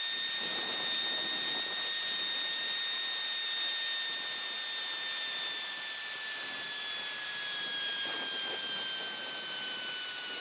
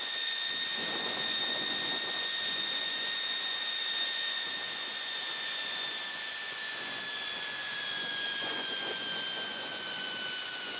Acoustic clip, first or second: first